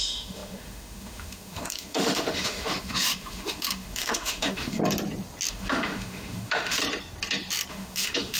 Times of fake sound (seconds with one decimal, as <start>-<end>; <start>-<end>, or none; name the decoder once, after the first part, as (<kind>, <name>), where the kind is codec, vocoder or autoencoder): 0.0-4.8 (autoencoder, DAC-VAE); 5.5-6.8; 7.7-8.4